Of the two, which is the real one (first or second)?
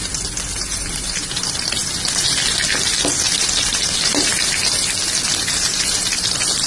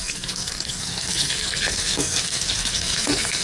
first